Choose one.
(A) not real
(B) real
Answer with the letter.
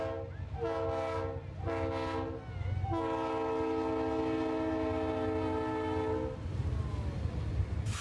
B